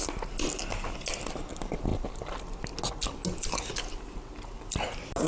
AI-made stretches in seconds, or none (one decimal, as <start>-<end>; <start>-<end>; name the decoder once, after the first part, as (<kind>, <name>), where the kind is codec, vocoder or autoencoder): none